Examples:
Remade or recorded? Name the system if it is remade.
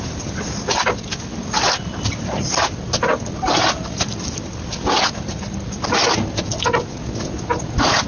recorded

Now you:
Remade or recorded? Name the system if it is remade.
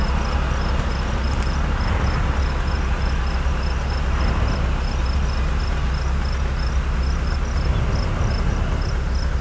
recorded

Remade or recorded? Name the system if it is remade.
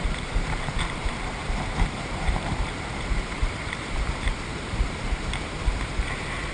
remade, vocoder, BigVGAN v2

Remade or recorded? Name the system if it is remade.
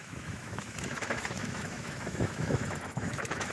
remade, autoencoder, DAC-VAE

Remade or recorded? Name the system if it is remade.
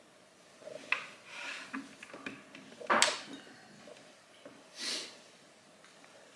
recorded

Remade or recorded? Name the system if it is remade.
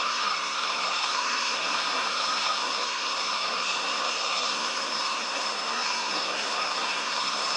remade, codec, SNAC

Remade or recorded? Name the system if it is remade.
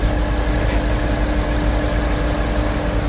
recorded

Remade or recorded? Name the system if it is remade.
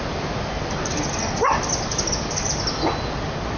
recorded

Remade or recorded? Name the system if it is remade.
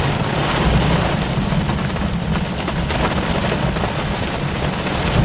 recorded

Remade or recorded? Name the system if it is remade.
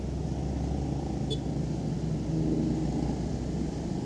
recorded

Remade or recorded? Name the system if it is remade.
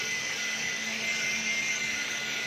remade, codec, DAC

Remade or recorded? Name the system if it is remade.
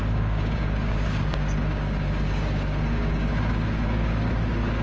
remade, codec, DAC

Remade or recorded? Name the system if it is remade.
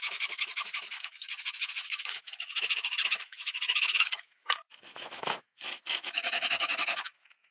remade, autoencoder, DAC-VAE